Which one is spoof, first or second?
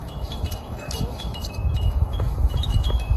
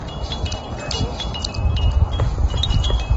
first